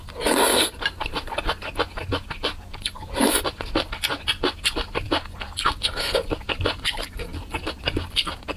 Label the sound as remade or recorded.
recorded